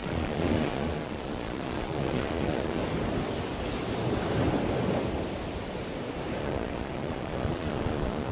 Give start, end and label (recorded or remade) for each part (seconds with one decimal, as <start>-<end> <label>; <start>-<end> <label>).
0.0-2.8 remade; 2.8-6.4 recorded; 6.4-8.3 remade

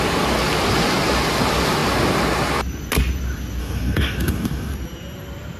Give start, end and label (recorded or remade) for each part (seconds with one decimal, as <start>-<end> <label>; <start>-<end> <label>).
0.0-3.6 recorded; 3.6-4.7 remade; 4.7-5.6 recorded

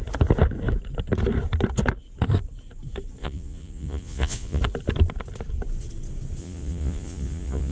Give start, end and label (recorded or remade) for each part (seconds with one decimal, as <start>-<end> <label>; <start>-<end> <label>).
0.0-3.2 recorded; 3.2-4.6 remade; 4.6-6.4 recorded; 6.4-7.7 remade

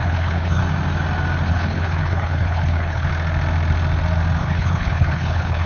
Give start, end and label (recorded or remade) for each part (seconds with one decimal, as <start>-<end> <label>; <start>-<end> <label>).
0.0-0.6 remade; 0.6-1.5 recorded; 1.5-3.1 remade; 3.1-4.4 recorded; 4.4-5.7 remade

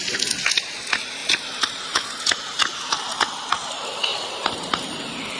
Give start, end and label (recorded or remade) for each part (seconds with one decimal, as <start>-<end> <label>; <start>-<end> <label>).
0.0-5.4 recorded